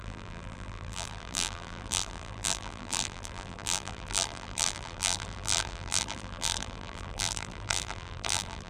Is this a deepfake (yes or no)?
yes